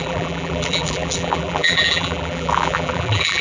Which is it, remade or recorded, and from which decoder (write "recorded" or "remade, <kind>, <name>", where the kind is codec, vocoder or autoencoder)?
remade, vocoder, BigVGAN v2